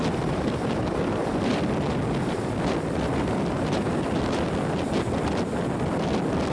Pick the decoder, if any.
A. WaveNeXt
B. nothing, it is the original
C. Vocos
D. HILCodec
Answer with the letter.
B